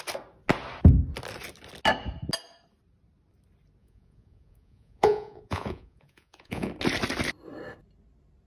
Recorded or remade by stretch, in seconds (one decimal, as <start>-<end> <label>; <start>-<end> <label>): 0.0-3.8 recorded; 3.8-6.7 remade; 6.7-8.5 recorded